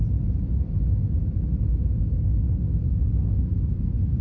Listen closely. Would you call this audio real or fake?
real